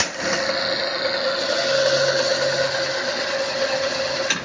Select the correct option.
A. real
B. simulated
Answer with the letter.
A